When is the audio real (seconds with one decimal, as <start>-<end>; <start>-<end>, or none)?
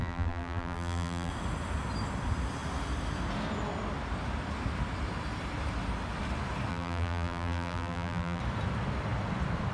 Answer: 1.3-6.7; 8.4-9.7